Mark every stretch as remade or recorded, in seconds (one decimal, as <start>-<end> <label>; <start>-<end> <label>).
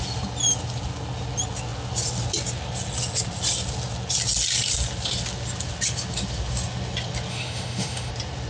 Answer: 0.0-7.3 recorded; 7.3-8.1 remade; 8.1-8.5 recorded